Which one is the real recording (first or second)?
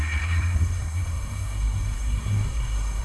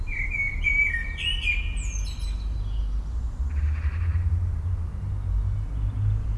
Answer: second